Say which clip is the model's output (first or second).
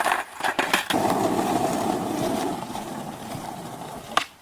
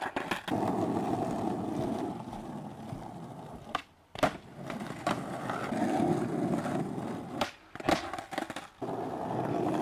first